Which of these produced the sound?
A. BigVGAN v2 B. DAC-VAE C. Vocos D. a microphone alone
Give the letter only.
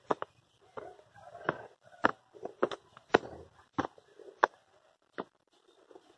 A